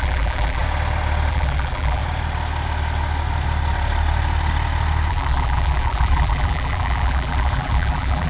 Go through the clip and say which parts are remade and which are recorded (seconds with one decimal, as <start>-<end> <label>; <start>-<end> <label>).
0.0-0.6 remade; 0.6-1.3 recorded; 1.3-2.0 remade; 2.0-5.1 recorded; 5.1-8.3 remade